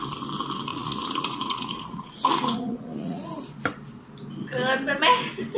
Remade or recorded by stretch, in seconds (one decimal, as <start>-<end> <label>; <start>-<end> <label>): 0.0-0.7 recorded; 0.7-3.4 remade; 3.4-5.6 recorded